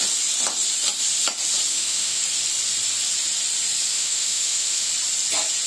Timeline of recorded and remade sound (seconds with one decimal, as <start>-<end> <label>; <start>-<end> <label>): 0.0-1.7 recorded; 1.7-2.2 remade; 2.2-3.9 recorded; 3.9-4.9 remade; 4.9-5.7 recorded